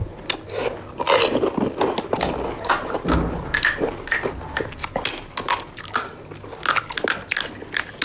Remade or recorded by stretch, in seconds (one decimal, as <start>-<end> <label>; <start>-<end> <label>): 0.0-4.8 recorded; 4.8-5.6 remade; 5.6-8.0 recorded